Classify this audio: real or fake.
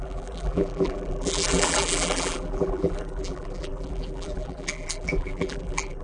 fake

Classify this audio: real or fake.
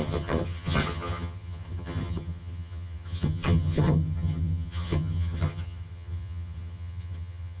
fake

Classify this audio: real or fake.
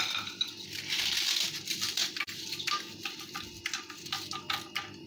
real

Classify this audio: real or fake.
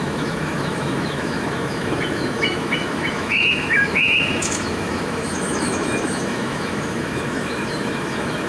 fake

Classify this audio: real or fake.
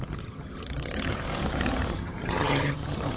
fake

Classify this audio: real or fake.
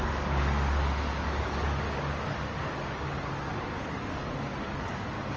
fake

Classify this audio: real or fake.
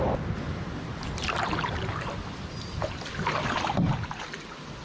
real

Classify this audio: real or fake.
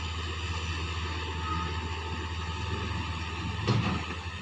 real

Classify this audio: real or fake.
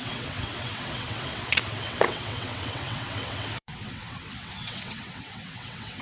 fake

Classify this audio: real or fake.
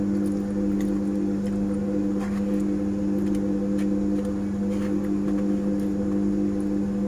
real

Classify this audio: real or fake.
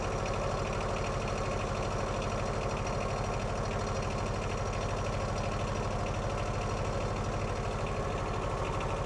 real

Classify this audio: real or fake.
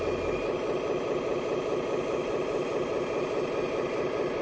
real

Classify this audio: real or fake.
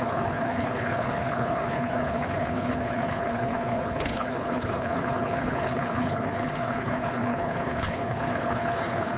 fake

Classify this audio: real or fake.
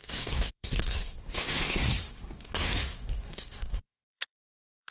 fake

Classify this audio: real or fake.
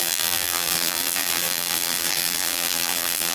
fake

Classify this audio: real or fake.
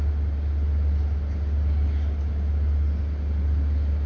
real